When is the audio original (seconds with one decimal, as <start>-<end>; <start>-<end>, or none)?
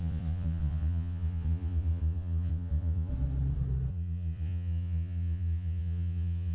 3.1-3.9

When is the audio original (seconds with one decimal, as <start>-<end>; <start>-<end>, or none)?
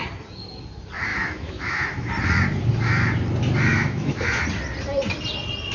0.0-1.1; 2.1-3.7; 4.4-5.7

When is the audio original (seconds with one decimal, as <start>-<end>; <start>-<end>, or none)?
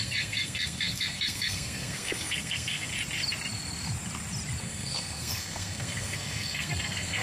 2.9-4.6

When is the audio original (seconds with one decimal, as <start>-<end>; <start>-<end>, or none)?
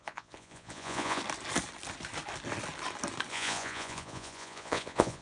1.2-3.3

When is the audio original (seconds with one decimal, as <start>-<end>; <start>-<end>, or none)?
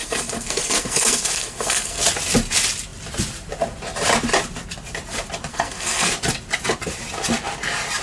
2.0-5.5; 6.1-8.0